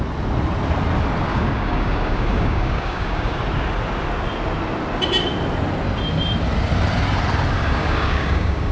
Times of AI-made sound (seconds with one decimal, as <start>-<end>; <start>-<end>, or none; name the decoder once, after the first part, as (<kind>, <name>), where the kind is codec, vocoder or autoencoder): 1.3-3.4 (codec, DAC); 7.6-8.7